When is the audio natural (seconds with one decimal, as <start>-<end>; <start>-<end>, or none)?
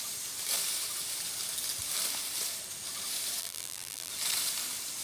0.0-3.4; 4.1-5.0